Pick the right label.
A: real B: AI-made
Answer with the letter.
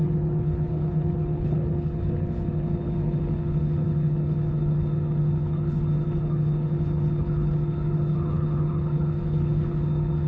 B